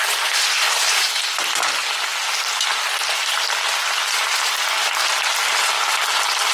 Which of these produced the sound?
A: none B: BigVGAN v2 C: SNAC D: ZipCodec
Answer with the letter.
A